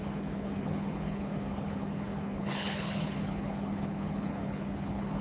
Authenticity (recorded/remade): remade